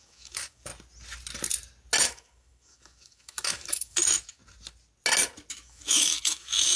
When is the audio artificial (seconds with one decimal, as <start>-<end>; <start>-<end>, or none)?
0.0-0.7; 2.0-4.4; 5.5-6.8